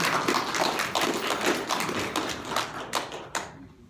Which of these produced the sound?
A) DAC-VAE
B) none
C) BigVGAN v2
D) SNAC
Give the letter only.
B